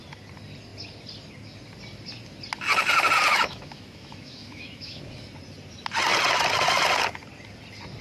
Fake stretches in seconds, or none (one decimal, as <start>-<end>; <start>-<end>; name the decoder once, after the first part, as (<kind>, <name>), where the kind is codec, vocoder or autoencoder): 3.3-5.0 (autoencoder, DAC-VAE)